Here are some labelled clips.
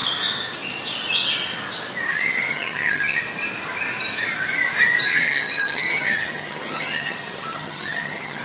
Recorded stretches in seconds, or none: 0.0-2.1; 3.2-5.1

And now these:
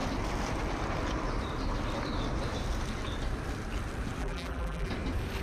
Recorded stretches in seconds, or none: 0.0-4.2; 4.9-5.4

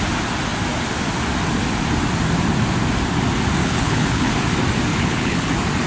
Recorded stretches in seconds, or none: 0.0-3.6; 4.3-4.9; 5.5-5.9

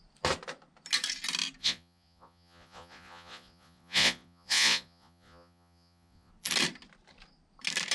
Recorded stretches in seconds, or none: 0.0-1.6; 6.3-7.9

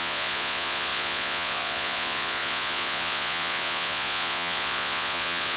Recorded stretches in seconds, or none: none

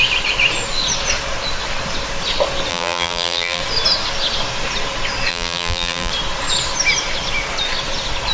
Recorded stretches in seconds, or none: 0.0-2.7; 3.6-5.3; 6.1-8.3

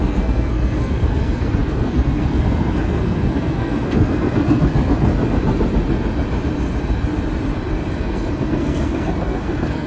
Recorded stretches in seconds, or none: 5.1-8.0